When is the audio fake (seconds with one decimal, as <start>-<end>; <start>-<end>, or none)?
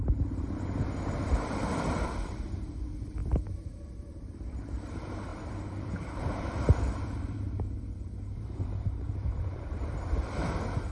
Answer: 0.0-10.9